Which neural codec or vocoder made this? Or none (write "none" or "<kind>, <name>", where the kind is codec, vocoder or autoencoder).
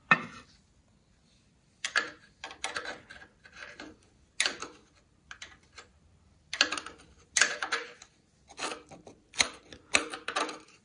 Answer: none